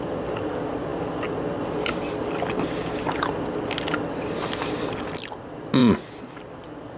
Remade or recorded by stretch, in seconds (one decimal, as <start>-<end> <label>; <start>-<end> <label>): 0.0-7.0 recorded